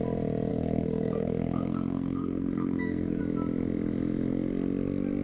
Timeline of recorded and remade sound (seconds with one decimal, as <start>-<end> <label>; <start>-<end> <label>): 0.0-0.5 recorded; 0.5-3.2 remade; 3.2-5.2 recorded